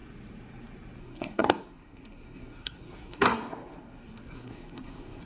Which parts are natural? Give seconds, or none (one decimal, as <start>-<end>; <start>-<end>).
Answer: 0.0-1.0